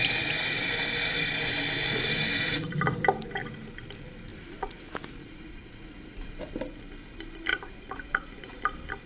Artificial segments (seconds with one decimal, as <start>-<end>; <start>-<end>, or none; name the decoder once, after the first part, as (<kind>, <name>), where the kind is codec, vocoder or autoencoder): 4.3-6.5 (vocoder, Vocos); 7.5-8.6